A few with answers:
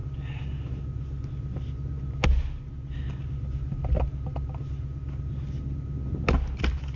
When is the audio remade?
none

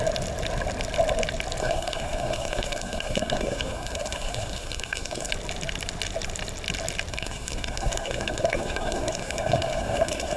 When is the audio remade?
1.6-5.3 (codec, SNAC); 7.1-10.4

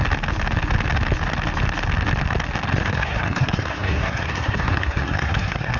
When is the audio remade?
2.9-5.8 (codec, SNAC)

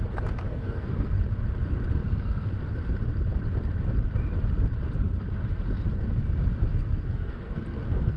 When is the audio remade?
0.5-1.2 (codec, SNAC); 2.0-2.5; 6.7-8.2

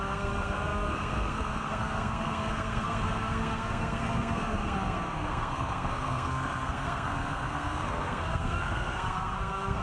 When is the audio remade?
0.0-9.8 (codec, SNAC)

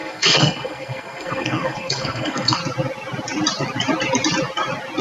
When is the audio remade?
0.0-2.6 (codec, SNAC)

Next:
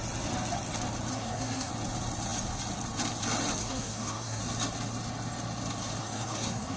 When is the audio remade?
1.1-1.7 (codec, SNAC); 3.6-4.4; 6.0-6.8

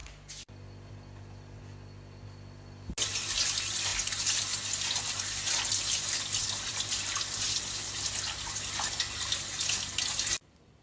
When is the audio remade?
none